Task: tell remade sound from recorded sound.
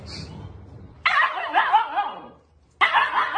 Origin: recorded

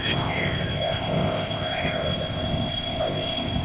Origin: remade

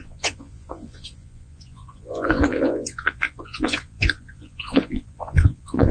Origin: remade